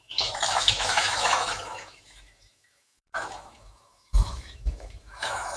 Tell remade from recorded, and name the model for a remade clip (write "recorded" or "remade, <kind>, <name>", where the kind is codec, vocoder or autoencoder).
remade, autoencoder, DAC-VAE